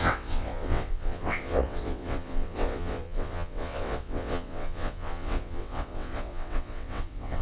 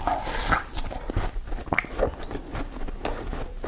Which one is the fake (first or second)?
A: first